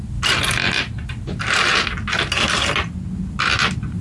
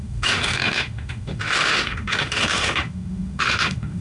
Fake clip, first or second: second